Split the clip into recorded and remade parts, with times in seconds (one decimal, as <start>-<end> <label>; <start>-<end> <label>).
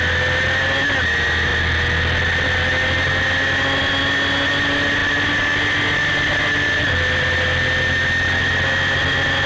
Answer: 0.0-9.5 recorded